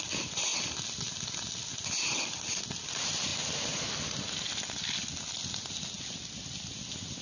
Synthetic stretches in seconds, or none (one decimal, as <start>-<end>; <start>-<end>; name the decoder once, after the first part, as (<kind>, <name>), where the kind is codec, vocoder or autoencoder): none